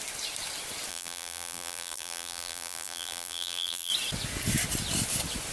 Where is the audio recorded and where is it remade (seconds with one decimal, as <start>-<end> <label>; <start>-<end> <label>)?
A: 0.0-0.9 recorded; 0.9-3.9 remade; 3.9-5.5 recorded